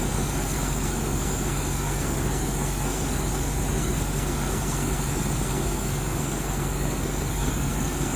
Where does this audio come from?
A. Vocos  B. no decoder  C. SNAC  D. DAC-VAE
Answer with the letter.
C